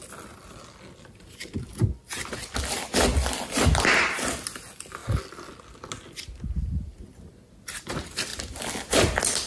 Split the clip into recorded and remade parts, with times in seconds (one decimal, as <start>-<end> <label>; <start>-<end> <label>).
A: 0.0-9.5 recorded